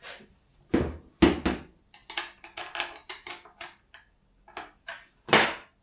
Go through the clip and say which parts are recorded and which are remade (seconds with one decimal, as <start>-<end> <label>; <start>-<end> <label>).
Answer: 0.0-5.8 recorded

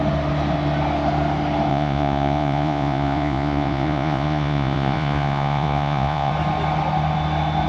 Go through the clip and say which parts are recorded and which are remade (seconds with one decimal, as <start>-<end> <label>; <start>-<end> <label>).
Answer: 0.0-1.7 recorded; 1.7-6.3 remade; 6.3-7.7 recorded

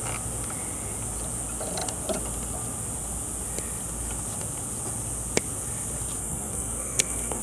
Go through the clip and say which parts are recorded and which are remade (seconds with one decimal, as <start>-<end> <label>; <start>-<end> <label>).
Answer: 0.0-6.2 recorded; 6.2-7.4 remade

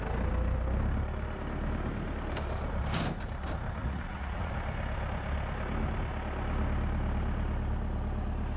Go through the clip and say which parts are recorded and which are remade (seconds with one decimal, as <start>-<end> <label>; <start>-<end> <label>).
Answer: 0.0-3.8 recorded; 3.8-4.5 remade; 4.5-8.6 recorded

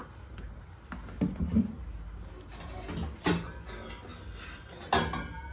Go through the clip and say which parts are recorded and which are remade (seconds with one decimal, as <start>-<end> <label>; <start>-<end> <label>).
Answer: 0.0-5.5 recorded

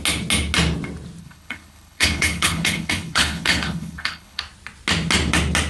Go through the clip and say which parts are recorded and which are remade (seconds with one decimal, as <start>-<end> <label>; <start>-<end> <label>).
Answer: 0.0-1.2 recorded; 1.2-4.4 remade; 4.4-5.7 recorded

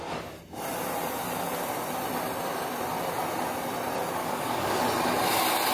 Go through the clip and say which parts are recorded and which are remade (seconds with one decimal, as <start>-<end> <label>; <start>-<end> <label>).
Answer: 0.0-4.2 recorded; 4.2-4.8 remade; 4.8-5.7 recorded

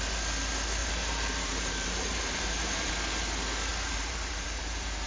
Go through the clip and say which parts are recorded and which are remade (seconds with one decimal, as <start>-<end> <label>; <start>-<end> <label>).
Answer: 0.0-0.8 recorded; 0.8-2.9 remade; 2.9-3.7 recorded; 3.7-5.1 remade